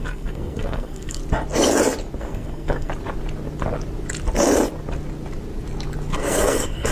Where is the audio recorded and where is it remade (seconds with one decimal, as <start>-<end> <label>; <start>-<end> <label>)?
0.0-1.2 remade; 1.2-2.2 recorded; 2.2-2.9 remade; 2.9-6.1 recorded; 6.1-6.9 remade